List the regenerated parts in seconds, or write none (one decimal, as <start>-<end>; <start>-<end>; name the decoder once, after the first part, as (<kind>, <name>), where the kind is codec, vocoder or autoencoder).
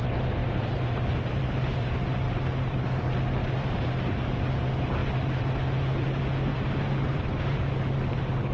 0.4-3.0 (vocoder, BigVGAN v2); 6.5-7.7